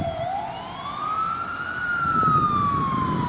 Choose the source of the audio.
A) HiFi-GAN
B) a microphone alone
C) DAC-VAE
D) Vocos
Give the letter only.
B